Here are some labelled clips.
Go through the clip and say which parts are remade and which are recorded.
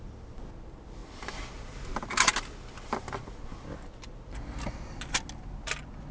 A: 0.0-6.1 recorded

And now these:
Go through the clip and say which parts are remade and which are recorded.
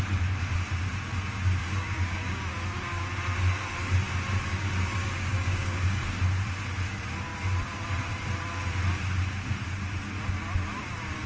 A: 0.0-1.6 recorded; 1.6-2.5 remade; 2.5-5.0 recorded; 5.0-6.2 remade; 6.2-11.3 recorded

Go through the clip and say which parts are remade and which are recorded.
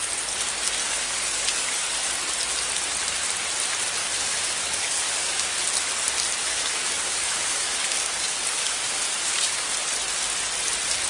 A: 0.0-0.8 recorded; 0.8-1.9 remade; 1.9-4.0 recorded; 4.0-5.6 remade; 5.6-6.4 recorded; 6.4-9.7 remade; 9.7-11.1 recorded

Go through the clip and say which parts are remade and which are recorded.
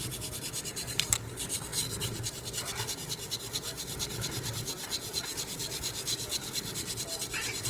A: 0.0-5.3 recorded; 5.3-6.9 remade; 6.9-7.7 recorded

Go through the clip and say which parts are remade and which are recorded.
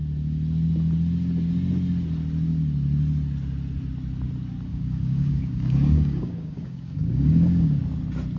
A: 0.0-4.7 recorded; 4.7-7.8 remade; 7.8-8.4 recorded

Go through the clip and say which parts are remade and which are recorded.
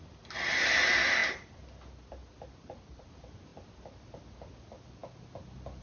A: 0.0-5.8 recorded